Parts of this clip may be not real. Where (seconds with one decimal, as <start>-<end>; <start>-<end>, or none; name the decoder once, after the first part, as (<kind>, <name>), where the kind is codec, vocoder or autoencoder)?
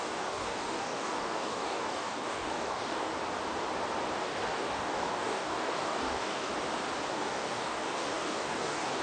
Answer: 0.0-3.1 (codec, DAC); 4.2-6.5; 7.1-9.0